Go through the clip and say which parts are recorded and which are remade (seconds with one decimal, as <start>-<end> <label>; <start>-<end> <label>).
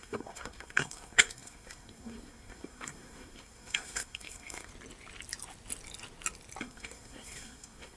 0.0-4.7 remade; 4.7-6.6 recorded; 6.6-8.0 remade